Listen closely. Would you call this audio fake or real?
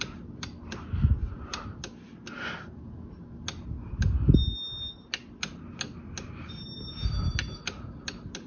real